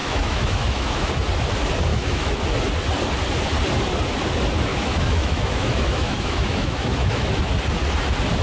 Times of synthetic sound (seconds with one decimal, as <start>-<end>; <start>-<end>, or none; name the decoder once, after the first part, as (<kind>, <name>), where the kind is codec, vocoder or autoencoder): 0.0-1.1 (autoencoder, DAC-VAE); 1.9-2.4; 4.7-7.4

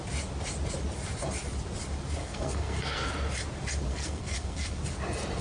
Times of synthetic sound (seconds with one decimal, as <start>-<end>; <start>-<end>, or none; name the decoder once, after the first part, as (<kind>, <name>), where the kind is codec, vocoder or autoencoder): 2.2-3.1 (codec, SNAC); 3.9-4.8

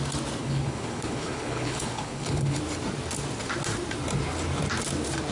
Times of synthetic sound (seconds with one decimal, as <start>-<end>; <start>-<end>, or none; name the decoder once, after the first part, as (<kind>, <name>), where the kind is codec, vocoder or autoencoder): 0.4-2.6 (codec, HILCodec)

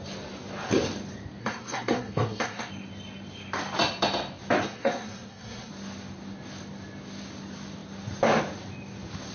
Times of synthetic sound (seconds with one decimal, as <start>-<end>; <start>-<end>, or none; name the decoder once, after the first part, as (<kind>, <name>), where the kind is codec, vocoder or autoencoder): 1.4-2.7 (codec, SNAC); 4.6-5.7

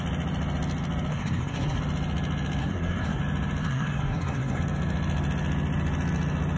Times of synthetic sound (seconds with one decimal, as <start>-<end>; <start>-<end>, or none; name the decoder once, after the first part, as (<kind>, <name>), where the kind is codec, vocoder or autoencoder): 1.1-1.8 (codec, SNAC); 2.6-3.2; 3.6-4.6

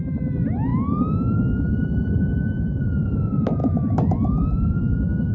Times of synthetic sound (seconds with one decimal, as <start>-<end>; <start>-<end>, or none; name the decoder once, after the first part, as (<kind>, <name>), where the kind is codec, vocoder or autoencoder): 3.6-5.3 (autoencoder, DAC-VAE)

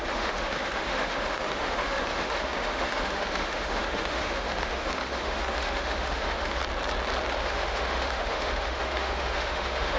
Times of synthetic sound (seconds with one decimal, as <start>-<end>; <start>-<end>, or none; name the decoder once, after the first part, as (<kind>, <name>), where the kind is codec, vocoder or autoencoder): 0.0-6.6 (autoencoder, DAC-VAE); 7.4-10.0